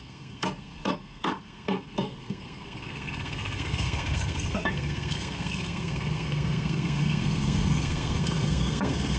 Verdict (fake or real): fake